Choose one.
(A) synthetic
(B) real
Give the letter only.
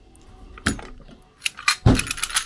B